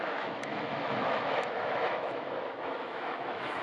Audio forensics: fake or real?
fake